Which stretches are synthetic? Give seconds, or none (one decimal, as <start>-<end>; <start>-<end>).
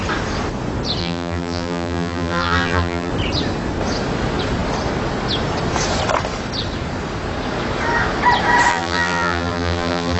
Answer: 1.0-3.1; 8.7-10.2